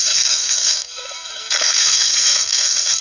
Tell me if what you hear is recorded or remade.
remade